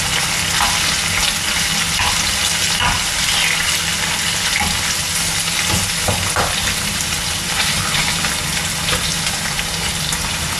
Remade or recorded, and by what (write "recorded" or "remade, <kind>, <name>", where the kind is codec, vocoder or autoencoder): recorded